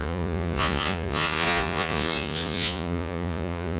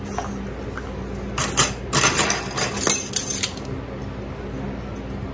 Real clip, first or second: second